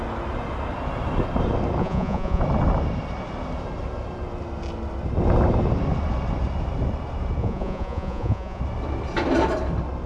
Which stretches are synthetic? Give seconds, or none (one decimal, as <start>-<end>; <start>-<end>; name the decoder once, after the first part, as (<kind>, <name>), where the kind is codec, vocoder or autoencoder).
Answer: 1.8-2.4 (vocoder, Vocos); 7.4-8.6